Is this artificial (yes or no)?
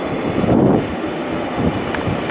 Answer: no